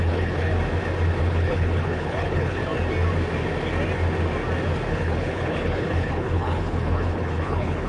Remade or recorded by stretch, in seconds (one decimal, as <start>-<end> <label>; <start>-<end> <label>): 0.0-0.5 remade; 0.5-1.2 recorded; 1.2-2.6 remade; 2.6-4.9 recorded; 4.9-7.9 remade